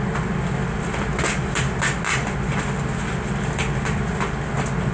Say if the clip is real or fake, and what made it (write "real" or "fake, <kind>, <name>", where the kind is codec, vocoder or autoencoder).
real